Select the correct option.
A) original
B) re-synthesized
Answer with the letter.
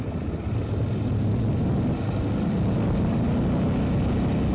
A